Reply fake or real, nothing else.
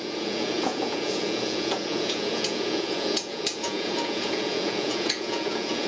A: fake